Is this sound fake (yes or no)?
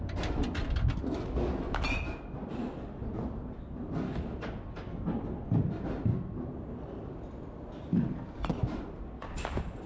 no